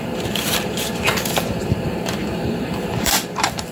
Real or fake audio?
fake